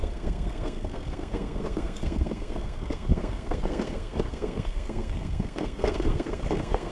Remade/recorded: remade